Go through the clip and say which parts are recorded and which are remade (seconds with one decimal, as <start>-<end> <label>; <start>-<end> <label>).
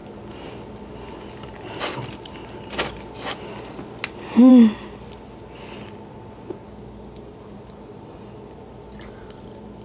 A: 0.0-9.8 recorded